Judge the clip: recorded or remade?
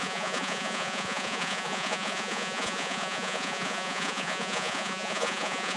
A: remade